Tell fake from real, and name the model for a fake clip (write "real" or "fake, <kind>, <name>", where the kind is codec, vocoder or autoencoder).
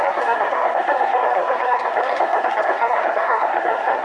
fake, codec, SNAC